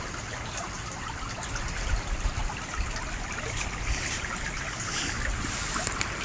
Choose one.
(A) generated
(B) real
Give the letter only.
B